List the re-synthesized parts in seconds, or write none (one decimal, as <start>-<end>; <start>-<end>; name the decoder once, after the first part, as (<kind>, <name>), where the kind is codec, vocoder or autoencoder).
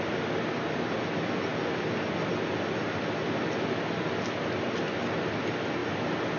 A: none